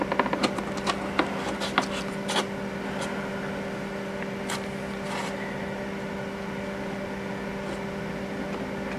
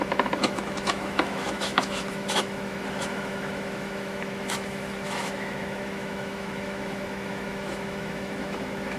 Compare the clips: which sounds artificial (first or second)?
second